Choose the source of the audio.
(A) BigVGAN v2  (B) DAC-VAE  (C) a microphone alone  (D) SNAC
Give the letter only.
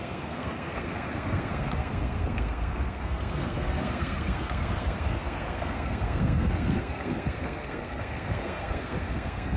D